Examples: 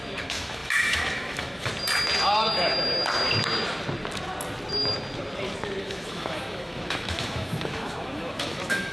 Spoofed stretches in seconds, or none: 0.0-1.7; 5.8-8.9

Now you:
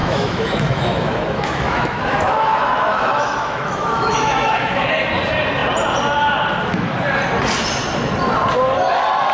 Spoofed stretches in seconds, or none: 0.0-4.9

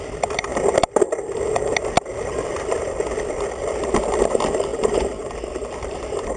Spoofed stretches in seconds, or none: 0.0-0.5; 2.0-4.7; 5.5-6.4

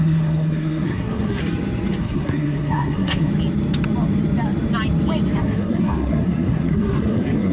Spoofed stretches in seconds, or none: 0.0-1.4; 2.0-3.3; 5.4-7.5

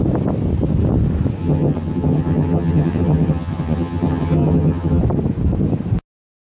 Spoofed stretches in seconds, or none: 1.4-5.0

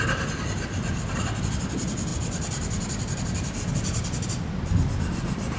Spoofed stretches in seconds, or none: none

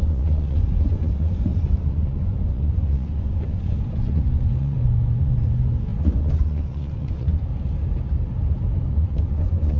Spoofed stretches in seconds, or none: 0.0-7.5; 8.9-9.8

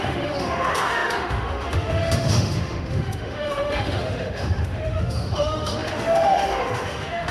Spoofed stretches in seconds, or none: 0.0-7.3